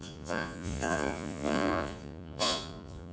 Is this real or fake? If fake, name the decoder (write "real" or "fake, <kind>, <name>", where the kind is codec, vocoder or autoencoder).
fake, vocoder, Vocos